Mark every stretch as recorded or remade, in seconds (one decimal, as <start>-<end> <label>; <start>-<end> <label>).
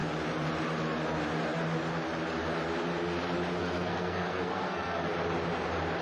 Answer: 0.0-3.6 recorded; 3.6-5.1 remade; 5.1-6.0 recorded